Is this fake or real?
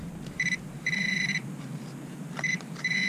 fake